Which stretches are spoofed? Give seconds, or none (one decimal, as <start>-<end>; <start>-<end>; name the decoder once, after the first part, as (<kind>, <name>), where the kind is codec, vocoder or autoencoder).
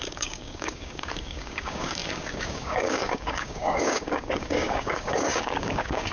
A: 0.0-6.1 (codec, DAC)